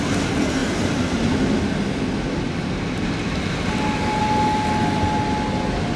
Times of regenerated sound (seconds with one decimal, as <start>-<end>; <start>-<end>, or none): none